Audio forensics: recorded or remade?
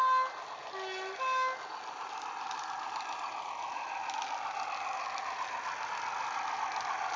recorded